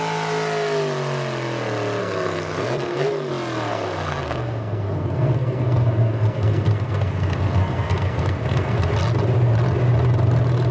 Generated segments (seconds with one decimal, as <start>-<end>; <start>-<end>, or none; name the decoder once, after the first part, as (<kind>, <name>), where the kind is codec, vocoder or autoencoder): 2.0-3.3 (codec, SNAC); 3.7-8.9